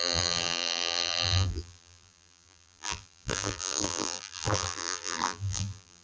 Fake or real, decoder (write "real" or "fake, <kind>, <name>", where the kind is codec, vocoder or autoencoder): fake, vocoder, BigVGAN v2